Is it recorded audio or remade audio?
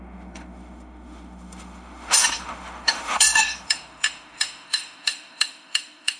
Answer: remade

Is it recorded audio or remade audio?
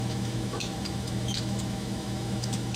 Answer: remade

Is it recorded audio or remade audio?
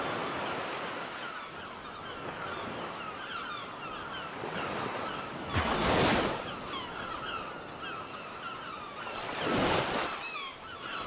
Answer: recorded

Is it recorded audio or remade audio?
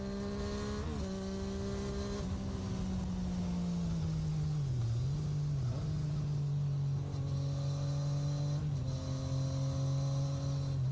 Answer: recorded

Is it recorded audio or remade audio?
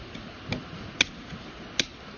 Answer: recorded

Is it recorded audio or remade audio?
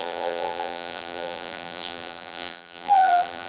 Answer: remade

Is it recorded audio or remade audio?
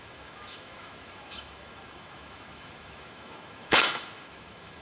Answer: remade